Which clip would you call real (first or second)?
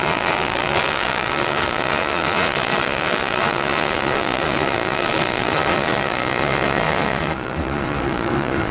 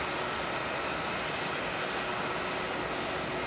second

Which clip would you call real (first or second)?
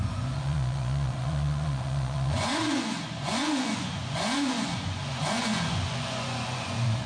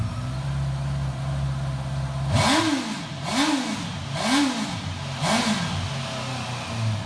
second